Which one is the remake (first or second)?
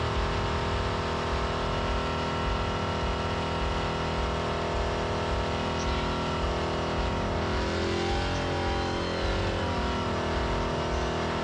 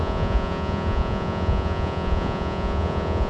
second